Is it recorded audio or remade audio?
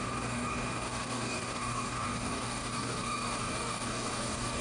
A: remade